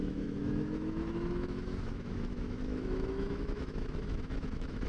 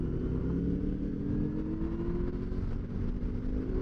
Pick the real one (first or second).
second